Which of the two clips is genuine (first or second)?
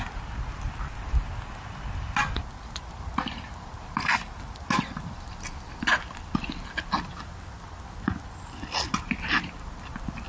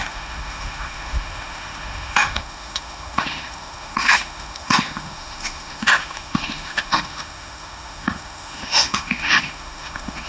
first